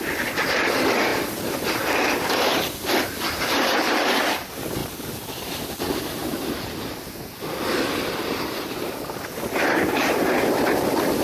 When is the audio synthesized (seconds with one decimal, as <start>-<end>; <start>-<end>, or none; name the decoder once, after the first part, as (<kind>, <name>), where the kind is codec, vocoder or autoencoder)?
1.1-1.9 (vocoder, BigVGAN v2); 4.8-5.8